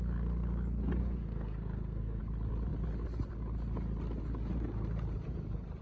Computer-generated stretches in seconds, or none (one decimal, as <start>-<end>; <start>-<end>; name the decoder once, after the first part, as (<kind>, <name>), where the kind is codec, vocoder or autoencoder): 1.0-2.2 (codec, SNAC)